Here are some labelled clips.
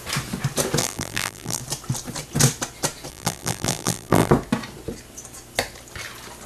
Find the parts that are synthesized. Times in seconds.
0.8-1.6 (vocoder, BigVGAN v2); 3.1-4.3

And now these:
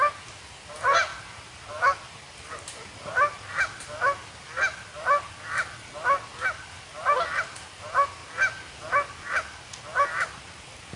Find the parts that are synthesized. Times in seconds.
none

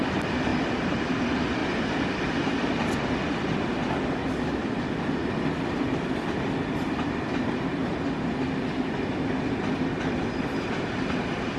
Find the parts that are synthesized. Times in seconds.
0.0-1.6 (vocoder, BigVGAN v2); 2.9-7.8; 10.6-11.6

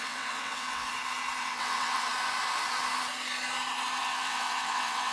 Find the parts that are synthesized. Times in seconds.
0.0-0.9 (vocoder, WaveNeXt); 1.4-2.1; 4.0-5.1

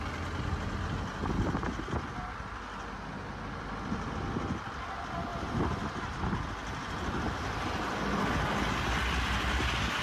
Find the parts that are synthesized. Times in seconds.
5.3-6.2 (vocoder, BigVGAN v2)

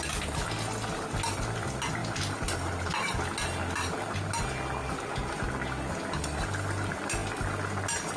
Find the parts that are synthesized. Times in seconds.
4.8-5.5 (vocoder, BigVGAN v2)

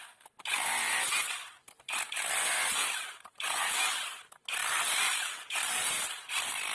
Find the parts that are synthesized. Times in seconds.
2.8-3.8 (vocoder, BigVGAN v2); 4.6-5.9